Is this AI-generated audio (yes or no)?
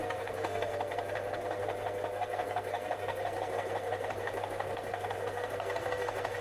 yes